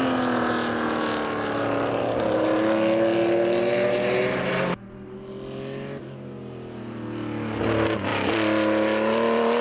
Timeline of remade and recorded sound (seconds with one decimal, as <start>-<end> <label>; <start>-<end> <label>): 0.0-9.6 recorded